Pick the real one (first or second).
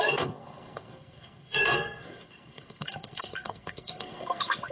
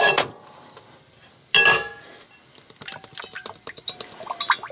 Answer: second